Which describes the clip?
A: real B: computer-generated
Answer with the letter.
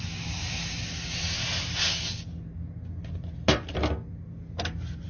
A